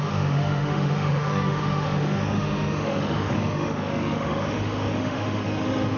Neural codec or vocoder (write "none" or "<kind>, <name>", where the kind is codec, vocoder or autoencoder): autoencoder, DAC-VAE